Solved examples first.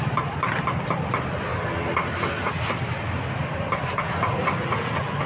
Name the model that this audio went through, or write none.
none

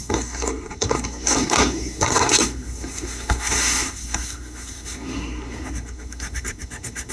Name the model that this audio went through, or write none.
codec, SNAC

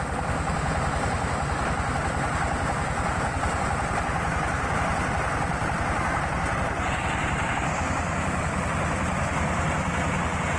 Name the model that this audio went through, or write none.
none